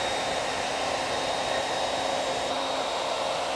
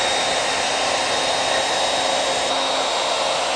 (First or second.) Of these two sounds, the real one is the second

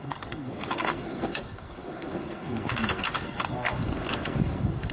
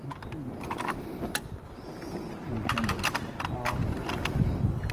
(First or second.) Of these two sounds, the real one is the second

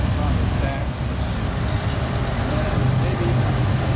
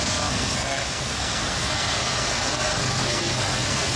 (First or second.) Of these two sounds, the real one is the first